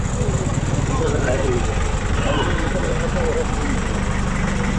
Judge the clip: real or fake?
real